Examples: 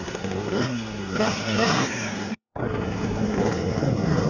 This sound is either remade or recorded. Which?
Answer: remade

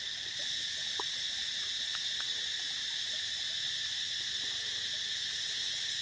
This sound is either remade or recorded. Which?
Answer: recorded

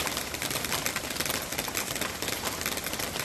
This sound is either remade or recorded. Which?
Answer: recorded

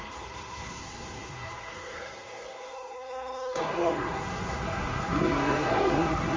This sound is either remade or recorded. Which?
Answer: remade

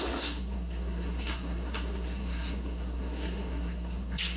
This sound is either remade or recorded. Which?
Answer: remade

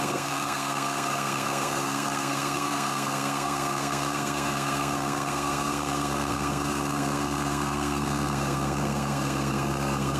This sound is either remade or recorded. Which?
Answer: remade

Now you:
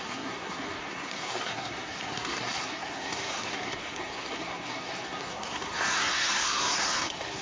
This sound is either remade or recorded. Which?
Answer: remade